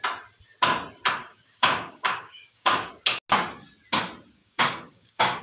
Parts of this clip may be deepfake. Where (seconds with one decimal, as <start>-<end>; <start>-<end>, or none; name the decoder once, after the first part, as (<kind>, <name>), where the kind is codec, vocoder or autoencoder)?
1.2-2.9 (codec, DAC); 4.4-5.4